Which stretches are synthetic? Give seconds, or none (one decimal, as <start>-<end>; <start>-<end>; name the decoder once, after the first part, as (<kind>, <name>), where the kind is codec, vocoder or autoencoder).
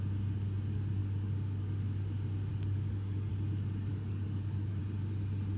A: 1.0-1.8 (codec, DAC); 2.5-3.3; 3.9-4.8